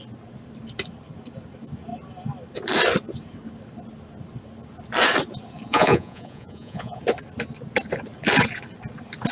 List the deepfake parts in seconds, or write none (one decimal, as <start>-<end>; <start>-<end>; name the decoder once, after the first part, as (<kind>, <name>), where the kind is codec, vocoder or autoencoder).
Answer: 5.7-7.0 (vocoder, Vocos)